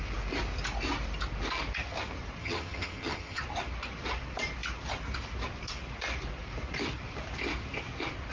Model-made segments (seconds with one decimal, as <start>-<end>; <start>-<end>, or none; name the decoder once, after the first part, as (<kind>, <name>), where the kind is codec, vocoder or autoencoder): 2.4-3.4 (vocoder, HiFi-GAN)